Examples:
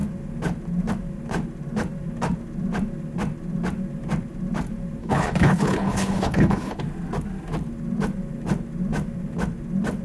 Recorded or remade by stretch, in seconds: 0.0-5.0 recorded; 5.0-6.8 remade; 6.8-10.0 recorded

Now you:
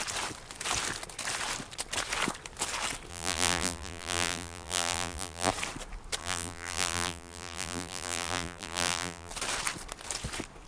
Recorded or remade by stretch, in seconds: 0.0-3.1 recorded; 3.1-5.5 remade; 5.5-6.2 recorded; 6.2-9.3 remade; 9.3-10.7 recorded

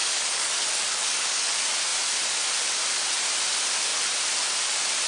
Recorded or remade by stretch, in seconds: 0.0-1.5 remade; 1.5-5.1 recorded

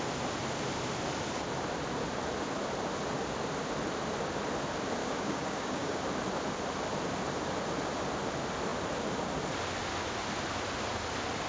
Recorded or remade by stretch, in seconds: 0.0-5.0 recorded; 5.0-6.0 remade; 6.0-11.5 recorded

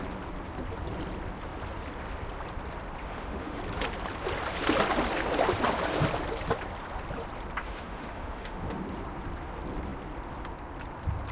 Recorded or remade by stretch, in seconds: 0.0-3.0 recorded; 3.0-3.6 remade; 3.6-7.6 recorded; 7.6-8.8 remade; 8.8-11.3 recorded

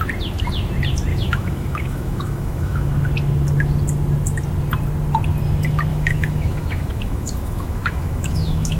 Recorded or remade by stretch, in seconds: 0.0-1.1 recorded; 1.1-2.9 remade; 2.9-5.9 recorded; 5.9-8.8 remade